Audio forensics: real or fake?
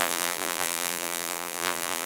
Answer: fake